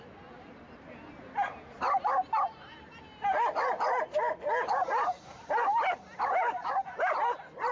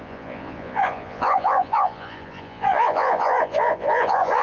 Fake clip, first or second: second